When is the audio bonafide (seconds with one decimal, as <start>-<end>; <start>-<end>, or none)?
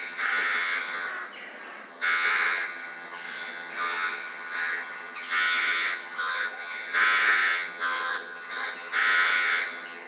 1.1-1.9